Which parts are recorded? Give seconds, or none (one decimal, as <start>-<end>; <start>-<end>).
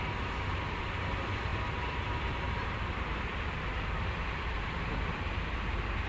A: 0.0-1.5; 5.2-6.1